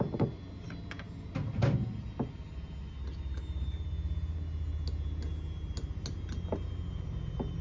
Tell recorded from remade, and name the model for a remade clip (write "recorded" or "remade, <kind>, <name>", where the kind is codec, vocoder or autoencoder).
recorded